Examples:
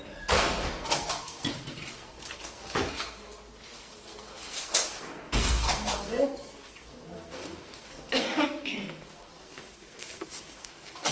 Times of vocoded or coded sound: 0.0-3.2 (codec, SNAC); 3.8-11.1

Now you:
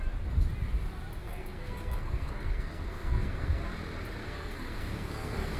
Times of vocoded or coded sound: 1.2-3.6 (codec, SNAC); 4.2-5.6